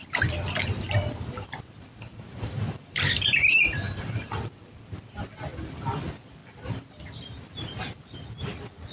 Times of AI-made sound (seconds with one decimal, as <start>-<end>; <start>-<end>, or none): 0.0-4.8; 5.5-6.0; 6.4-7.5